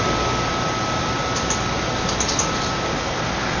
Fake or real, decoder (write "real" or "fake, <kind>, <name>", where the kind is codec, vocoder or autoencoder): real